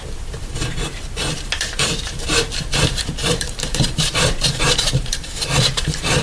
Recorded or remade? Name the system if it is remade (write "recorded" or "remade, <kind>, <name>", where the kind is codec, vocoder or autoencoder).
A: remade, vocoder, BigVGAN v2